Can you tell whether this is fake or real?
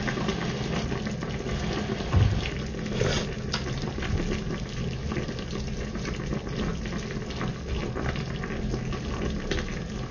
real